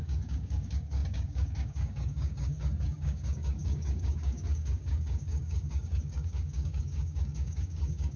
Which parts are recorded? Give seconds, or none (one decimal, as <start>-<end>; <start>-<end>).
none